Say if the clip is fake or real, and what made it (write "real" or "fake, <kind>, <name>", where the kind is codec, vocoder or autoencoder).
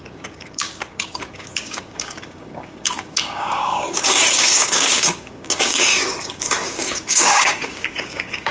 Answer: fake, codec, DAC